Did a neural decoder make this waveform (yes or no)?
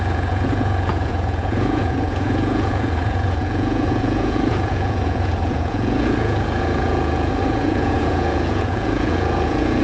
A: yes